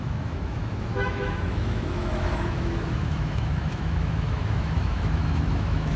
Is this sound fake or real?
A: fake